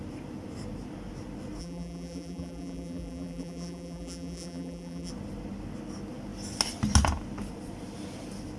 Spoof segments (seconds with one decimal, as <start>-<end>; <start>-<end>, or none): 1.6-5.1